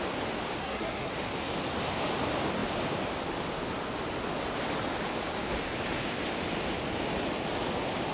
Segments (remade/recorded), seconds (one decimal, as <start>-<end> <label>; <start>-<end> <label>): 0.0-0.6 recorded; 0.6-1.1 remade; 1.1-8.1 recorded